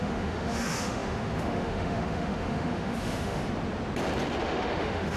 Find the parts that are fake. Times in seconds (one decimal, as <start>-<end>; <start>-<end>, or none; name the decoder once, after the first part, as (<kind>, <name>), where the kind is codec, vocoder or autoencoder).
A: 0.0-3.4 (autoencoder, DAC-VAE); 4.4-5.2